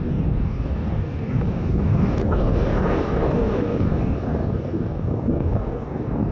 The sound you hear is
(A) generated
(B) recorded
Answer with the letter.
A